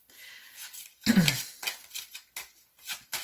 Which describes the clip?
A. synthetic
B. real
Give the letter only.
B